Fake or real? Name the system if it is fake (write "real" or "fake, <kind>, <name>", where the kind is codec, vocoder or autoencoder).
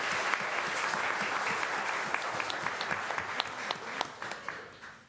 real